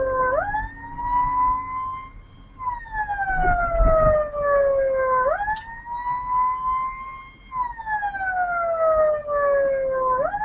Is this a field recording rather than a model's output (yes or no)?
yes